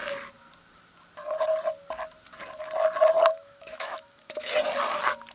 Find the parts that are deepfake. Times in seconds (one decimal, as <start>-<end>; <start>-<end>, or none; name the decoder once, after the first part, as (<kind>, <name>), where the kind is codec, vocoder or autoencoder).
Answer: 3.3-4.5 (autoencoder, DAC-VAE)

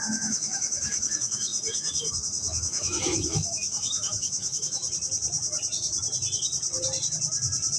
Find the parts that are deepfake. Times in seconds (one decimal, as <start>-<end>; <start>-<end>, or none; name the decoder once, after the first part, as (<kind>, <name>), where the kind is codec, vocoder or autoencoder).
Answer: 0.0-4.8 (autoencoder, DAC-VAE)

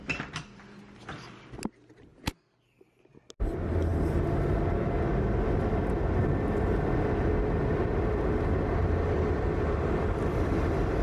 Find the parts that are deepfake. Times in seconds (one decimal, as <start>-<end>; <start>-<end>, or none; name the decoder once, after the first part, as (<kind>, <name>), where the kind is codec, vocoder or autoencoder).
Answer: none

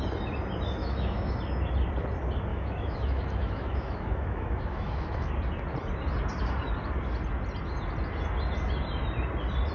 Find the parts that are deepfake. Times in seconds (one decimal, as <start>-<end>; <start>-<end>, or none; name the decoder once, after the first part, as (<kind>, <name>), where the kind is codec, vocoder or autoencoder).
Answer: 0.8-1.3 (autoencoder, DAC-VAE); 2.5-5.3

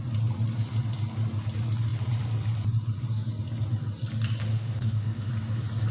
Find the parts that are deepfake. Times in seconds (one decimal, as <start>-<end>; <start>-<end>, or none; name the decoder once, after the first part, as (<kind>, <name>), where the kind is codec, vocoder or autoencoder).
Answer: 4.5-5.3 (autoencoder, DAC-VAE)

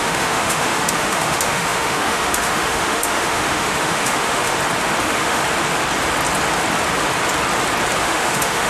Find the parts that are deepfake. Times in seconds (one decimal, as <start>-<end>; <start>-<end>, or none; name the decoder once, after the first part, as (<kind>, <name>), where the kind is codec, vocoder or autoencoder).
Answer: 0.0-4.5 (autoencoder, DAC-VAE); 5.0-5.4; 8.0-8.7